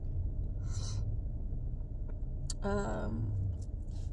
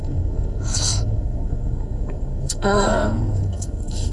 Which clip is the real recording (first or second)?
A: first